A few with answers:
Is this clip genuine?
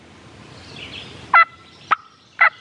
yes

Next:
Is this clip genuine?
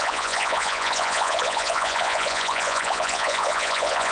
no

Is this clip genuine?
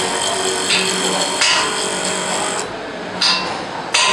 yes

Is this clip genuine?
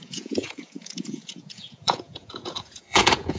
no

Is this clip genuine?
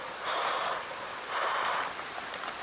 yes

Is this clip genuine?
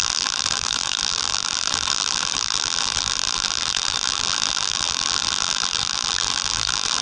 no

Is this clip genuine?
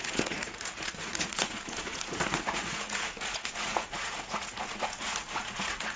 no